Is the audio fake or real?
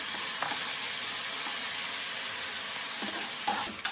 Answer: real